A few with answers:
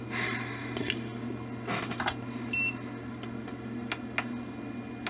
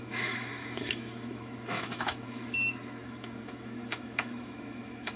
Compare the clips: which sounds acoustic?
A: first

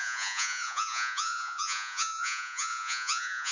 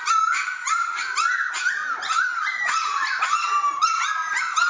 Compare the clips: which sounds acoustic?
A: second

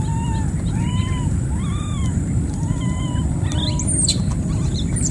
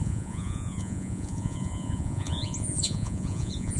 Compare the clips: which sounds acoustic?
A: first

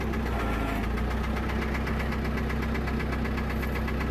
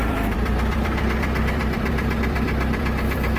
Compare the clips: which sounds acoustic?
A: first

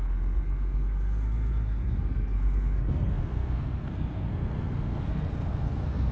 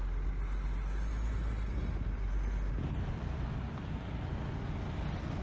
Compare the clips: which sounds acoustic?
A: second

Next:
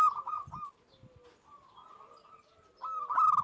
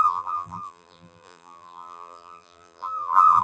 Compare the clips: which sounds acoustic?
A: first